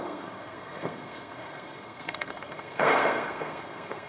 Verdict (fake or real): fake